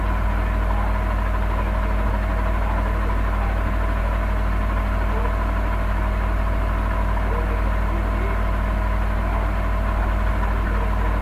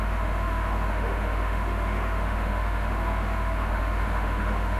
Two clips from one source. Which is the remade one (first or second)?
second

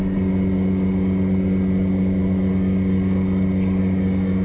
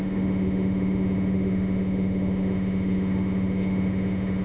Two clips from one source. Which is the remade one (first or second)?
second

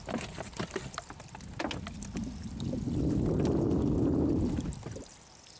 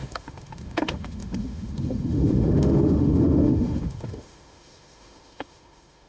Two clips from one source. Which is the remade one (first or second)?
second